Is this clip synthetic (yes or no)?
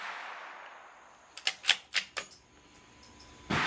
no